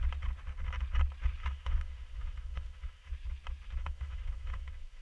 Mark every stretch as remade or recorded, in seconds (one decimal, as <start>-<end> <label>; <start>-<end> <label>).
0.0-1.4 recorded; 1.4-3.1 remade; 3.1-3.8 recorded; 3.8-5.0 remade